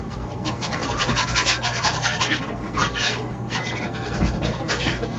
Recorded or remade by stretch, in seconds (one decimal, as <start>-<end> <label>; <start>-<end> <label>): 0.0-5.2 remade